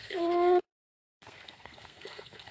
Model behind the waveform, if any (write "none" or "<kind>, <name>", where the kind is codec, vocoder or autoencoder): codec, SNAC